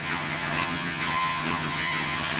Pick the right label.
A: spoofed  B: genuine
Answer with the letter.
A